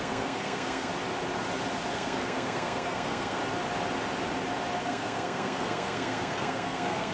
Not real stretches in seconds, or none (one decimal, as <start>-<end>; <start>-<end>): 0.0-0.9; 1.9-3.4; 4.8-7.1